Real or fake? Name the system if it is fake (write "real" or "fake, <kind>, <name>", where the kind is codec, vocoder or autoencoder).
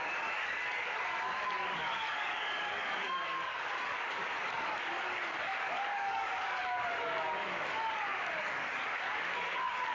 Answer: fake, codec, DAC